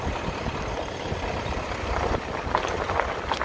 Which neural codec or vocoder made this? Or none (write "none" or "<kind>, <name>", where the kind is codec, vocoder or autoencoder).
none